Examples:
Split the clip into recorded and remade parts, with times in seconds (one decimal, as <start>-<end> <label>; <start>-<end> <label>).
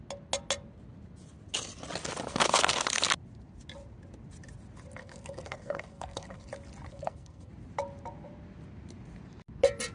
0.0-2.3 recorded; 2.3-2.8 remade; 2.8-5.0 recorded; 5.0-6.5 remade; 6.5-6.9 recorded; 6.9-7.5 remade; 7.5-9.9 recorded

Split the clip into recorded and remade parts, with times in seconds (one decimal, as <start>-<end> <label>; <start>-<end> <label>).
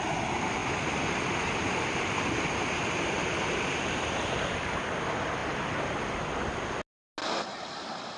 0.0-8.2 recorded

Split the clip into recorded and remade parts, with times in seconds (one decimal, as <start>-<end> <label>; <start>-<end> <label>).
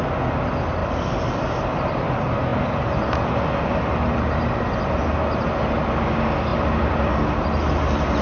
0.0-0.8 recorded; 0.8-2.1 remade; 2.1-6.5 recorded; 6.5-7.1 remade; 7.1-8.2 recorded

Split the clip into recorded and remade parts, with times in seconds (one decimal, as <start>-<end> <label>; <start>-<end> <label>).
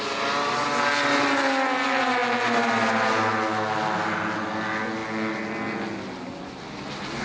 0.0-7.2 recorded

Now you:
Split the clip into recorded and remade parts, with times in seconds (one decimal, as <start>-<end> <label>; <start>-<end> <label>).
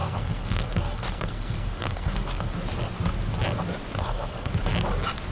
0.0-2.5 remade; 2.5-4.0 recorded; 4.0-4.5 remade; 4.5-5.3 recorded